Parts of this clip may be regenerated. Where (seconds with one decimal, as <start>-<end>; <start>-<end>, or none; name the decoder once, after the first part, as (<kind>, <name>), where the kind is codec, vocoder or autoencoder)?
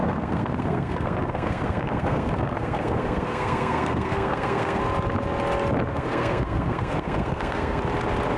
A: 0.0-4.8 (codec, SNAC); 5.9-7.8